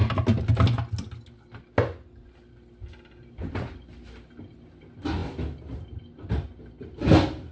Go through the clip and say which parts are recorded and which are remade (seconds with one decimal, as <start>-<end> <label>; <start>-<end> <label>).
0.0-7.5 recorded